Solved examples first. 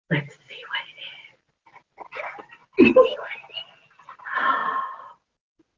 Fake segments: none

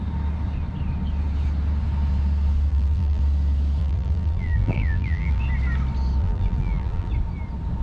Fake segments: 2.7-3.2; 3.8-5.4; 6.2-7.1

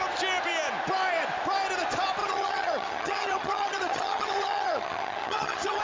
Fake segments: 2.2-5.8

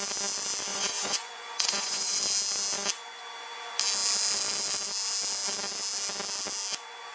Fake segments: 0.7-2.2

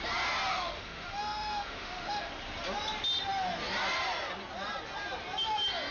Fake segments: 0.5-2.3

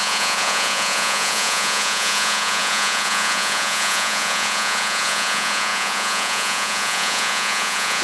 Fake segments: 0.0-8.0